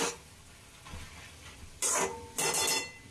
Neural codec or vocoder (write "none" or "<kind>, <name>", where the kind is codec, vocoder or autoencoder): none